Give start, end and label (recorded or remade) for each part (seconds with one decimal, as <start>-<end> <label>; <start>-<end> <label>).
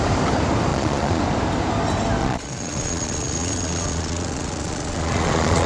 0.0-0.7 recorded; 0.7-1.2 remade; 1.2-2.2 recorded; 2.2-5.7 remade